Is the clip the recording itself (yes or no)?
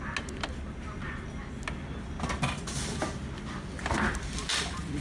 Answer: yes